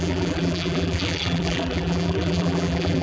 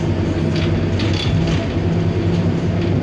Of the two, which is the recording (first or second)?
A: second